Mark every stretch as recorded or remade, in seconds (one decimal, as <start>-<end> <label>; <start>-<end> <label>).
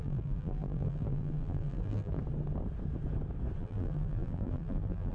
0.0-2.2 remade; 2.2-3.6 recorded; 3.6-5.1 remade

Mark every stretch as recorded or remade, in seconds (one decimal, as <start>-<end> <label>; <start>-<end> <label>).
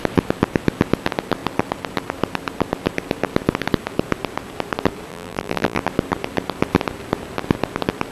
0.0-5.1 recorded; 5.1-5.8 remade; 5.8-8.1 recorded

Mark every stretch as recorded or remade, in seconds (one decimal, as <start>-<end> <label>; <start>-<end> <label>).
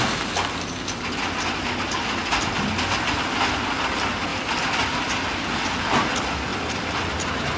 0.0-4.3 recorded; 4.3-5.7 remade; 5.7-7.6 recorded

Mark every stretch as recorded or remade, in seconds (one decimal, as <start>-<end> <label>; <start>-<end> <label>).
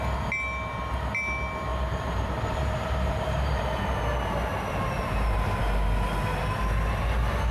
0.0-1.7 recorded; 1.7-3.8 remade; 3.8-4.5 recorded; 4.5-5.6 remade; 5.6-7.5 recorded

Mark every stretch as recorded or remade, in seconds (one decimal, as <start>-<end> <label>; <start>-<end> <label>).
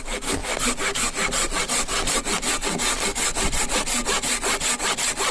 0.0-5.3 recorded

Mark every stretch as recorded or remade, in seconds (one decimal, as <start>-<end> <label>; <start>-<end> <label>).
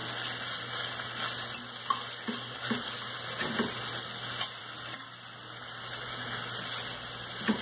0.0-7.6 recorded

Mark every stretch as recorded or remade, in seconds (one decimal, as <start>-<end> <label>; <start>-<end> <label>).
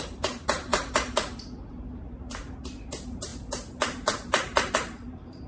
0.0-0.7 remade; 0.7-1.7 recorded; 1.7-5.5 remade